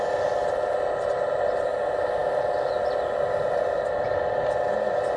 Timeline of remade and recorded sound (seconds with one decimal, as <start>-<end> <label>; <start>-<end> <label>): 0.0-5.2 recorded